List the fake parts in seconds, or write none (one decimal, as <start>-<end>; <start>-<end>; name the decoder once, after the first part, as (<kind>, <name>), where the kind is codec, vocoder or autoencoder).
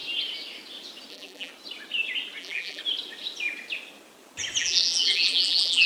1.1-1.5 (vocoder, BigVGAN v2); 2.4-2.8; 4.6-5.9